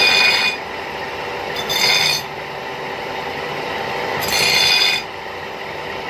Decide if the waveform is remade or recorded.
recorded